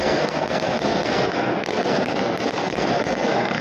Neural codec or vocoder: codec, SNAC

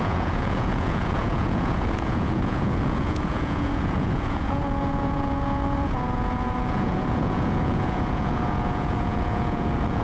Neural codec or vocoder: vocoder, Vocos